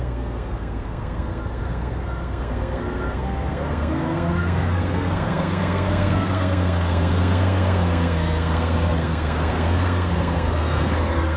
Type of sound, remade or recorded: remade